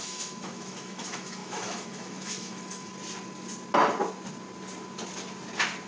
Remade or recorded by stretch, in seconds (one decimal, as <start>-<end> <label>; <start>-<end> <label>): 0.0-2.9 remade; 2.9-5.9 recorded